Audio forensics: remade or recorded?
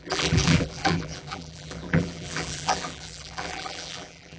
remade